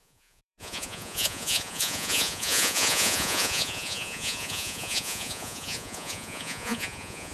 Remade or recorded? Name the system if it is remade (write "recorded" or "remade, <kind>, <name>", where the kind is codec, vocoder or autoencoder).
remade, vocoder, Vocos